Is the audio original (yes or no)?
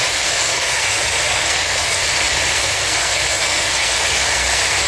no